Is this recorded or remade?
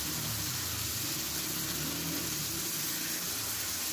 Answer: recorded